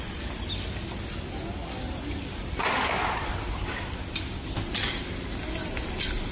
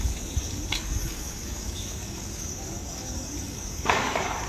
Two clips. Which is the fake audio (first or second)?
second